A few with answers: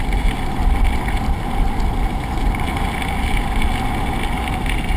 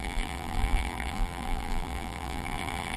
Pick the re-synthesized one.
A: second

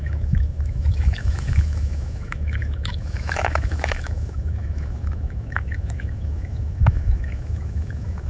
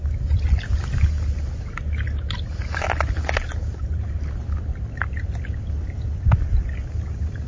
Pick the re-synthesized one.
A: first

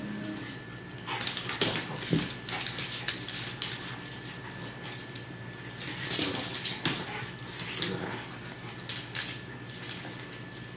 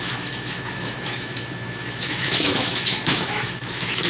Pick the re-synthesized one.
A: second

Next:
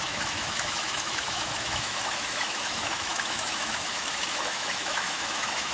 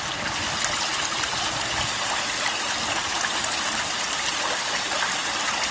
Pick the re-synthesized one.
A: first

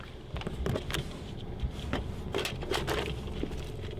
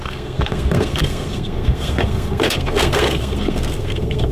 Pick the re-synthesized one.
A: second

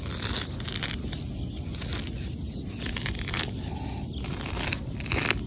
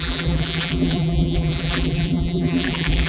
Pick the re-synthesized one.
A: second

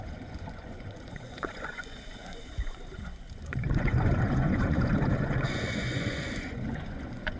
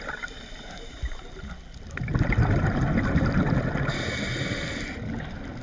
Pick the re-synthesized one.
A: first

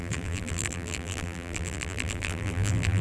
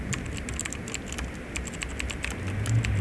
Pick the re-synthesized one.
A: first